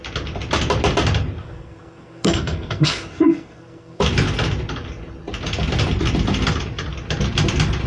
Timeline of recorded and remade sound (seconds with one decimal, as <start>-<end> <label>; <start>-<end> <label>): 0.0-1.4 recorded; 1.4-4.0 remade; 4.0-7.9 recorded